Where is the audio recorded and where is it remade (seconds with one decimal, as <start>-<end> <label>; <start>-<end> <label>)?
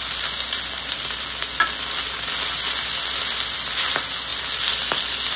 0.0-5.4 recorded